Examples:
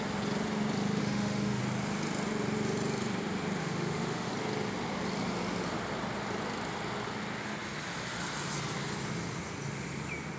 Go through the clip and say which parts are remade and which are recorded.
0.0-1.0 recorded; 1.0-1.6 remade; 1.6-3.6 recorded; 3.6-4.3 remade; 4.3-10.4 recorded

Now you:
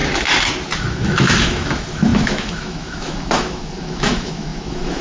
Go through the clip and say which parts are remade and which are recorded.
0.0-0.8 recorded; 0.8-5.0 remade

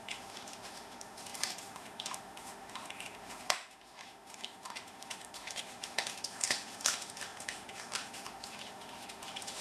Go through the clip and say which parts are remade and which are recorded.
0.0-9.6 remade

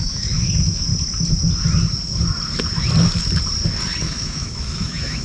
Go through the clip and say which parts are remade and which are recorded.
0.0-0.9 remade; 0.9-4.0 recorded; 4.0-5.2 remade